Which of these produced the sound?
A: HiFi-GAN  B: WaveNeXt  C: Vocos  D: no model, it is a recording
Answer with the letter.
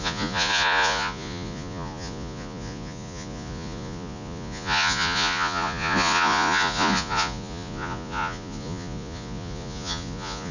C